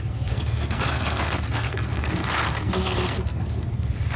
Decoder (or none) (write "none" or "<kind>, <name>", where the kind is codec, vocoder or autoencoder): codec, SNAC